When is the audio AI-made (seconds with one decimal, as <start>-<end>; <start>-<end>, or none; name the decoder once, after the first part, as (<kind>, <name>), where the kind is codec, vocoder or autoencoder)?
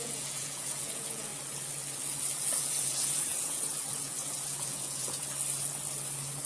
0.0-1.3 (vocoder, Vocos); 2.6-5.2